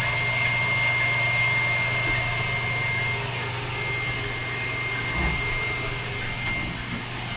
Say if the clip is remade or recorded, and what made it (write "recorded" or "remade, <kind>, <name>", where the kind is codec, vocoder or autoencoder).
recorded